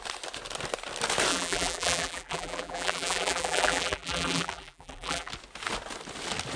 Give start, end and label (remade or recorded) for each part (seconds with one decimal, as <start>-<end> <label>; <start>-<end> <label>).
0.0-1.3 recorded; 1.3-5.3 remade; 5.3-6.6 recorded